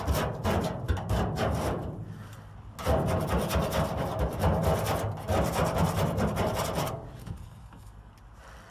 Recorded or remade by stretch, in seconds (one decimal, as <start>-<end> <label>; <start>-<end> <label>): 0.0-7.2 recorded; 7.2-8.1 remade; 8.1-8.7 recorded